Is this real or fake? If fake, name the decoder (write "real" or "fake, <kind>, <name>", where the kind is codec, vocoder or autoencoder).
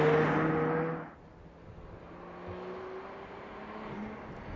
real